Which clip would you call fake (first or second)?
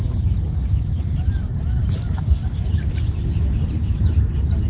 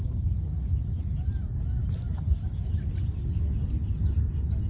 first